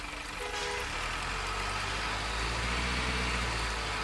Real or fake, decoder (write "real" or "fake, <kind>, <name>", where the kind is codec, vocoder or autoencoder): real